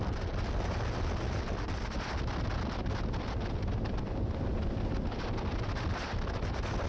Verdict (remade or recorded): recorded